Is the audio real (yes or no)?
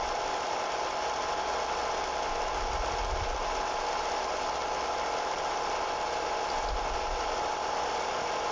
yes